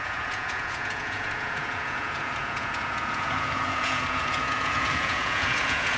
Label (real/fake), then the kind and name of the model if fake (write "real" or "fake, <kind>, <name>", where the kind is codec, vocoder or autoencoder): fake, vocoder, Vocos